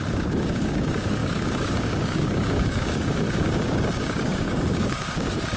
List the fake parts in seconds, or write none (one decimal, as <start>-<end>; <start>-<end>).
0.0-5.6